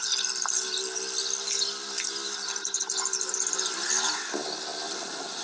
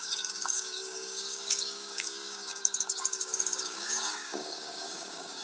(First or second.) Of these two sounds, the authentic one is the first